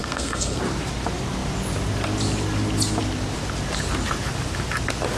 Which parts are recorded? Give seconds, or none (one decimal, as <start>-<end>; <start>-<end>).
0.6-5.2